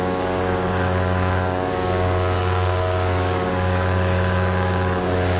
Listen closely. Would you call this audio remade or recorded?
remade